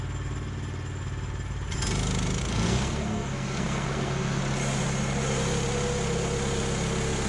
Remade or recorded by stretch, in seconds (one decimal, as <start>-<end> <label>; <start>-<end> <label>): 0.0-2.4 recorded; 2.4-4.4 remade; 4.4-7.3 recorded